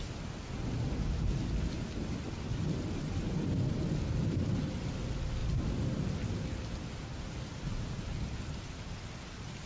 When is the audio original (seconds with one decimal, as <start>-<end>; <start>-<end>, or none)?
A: 0.0-9.7